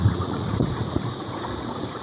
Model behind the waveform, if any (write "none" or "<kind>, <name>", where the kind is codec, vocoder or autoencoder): vocoder, Vocos